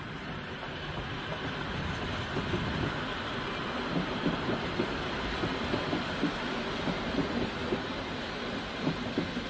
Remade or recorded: recorded